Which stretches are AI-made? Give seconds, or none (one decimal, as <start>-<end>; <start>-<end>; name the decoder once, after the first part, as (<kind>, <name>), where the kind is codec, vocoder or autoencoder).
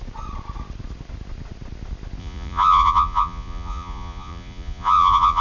2.2-5.4 (vocoder, Vocos)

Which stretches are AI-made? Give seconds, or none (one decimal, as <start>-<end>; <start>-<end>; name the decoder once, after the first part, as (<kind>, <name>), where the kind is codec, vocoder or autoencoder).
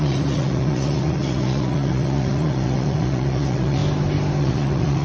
0.0-3.8 (vocoder, Vocos); 4.4-5.0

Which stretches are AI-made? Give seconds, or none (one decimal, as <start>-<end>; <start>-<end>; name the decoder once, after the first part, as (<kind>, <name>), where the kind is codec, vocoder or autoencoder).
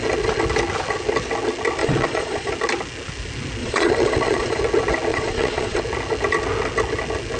1.8-2.5 (vocoder, Vocos); 3.6-4.6; 5.1-5.8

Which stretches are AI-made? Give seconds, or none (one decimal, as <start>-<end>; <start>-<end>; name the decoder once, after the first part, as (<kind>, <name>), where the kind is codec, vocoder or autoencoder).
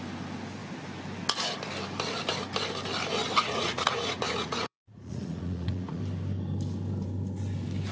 3.4-6.0 (vocoder, Vocos)